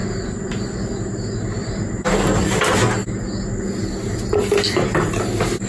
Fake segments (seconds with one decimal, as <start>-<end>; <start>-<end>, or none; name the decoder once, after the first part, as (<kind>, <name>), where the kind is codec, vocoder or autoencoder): none